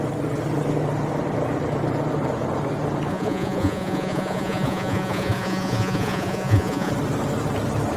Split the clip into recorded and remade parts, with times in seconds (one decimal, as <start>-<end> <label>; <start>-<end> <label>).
0.0-3.1 recorded; 3.1-6.9 remade; 6.9-8.0 recorded